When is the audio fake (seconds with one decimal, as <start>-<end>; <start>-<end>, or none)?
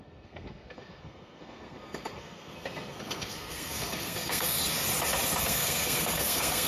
0.0-4.6; 5.4-6.7